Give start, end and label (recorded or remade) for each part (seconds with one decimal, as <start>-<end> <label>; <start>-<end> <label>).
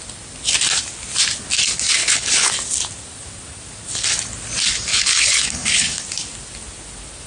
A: 0.0-2.0 recorded; 2.0-2.5 remade; 2.5-4.9 recorded; 4.9-6.0 remade; 6.0-7.3 recorded